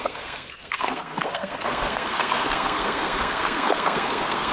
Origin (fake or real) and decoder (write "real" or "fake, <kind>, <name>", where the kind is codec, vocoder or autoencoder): fake, codec, SNAC